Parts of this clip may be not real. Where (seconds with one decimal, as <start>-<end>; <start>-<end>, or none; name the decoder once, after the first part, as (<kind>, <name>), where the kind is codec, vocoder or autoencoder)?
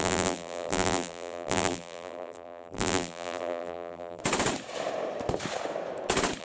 0.0-4.2 (vocoder, BigVGAN v2)